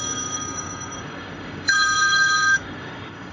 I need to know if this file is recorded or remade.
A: remade